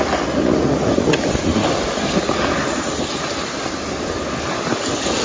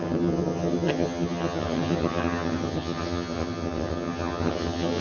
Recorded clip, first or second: first